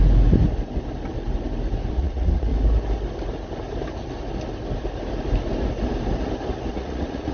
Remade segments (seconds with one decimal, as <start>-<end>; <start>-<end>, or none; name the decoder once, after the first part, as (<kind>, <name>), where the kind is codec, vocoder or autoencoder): 1.9-2.5 (vocoder, Vocos); 6.7-7.3